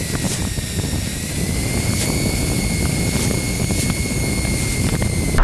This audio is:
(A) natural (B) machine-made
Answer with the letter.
A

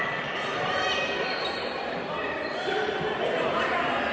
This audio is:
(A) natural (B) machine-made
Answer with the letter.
A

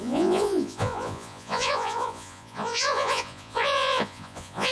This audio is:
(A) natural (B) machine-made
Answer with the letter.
B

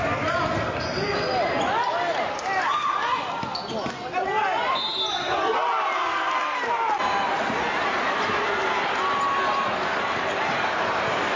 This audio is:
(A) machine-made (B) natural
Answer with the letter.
B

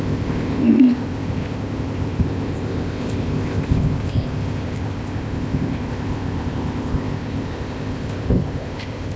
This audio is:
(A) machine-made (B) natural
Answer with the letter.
A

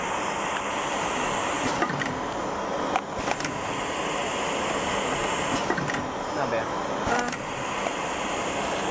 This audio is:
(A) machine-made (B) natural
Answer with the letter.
B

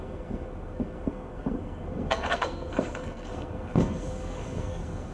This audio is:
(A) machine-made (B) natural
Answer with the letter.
A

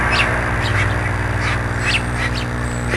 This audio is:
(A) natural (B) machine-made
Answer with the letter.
A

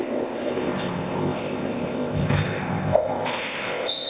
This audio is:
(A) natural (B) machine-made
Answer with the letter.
B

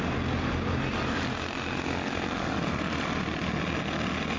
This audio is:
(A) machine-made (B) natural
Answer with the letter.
B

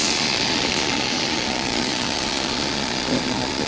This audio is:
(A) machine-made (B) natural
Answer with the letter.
A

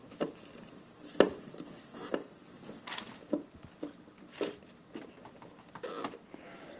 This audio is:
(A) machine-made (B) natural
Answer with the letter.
B